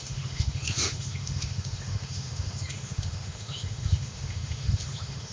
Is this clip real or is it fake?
fake